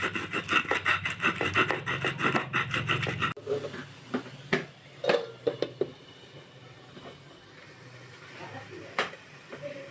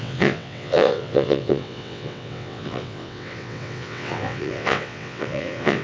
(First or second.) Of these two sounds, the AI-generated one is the second